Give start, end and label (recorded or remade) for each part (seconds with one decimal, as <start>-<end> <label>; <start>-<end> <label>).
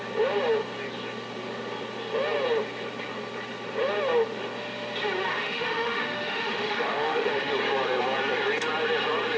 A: 0.0-5.3 recorded; 5.3-7.5 remade; 7.5-9.4 recorded